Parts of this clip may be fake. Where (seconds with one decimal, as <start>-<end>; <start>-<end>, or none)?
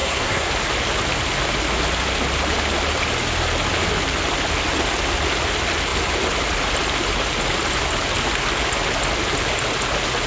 0.0-0.5